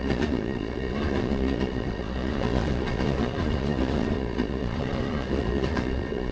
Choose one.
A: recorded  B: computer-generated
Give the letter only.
B